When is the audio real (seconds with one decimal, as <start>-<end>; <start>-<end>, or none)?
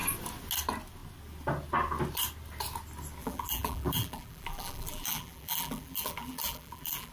0.0-3.2